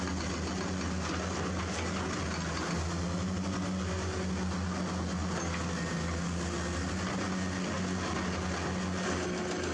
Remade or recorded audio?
recorded